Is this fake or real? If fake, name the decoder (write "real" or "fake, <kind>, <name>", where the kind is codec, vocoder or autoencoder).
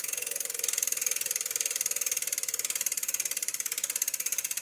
real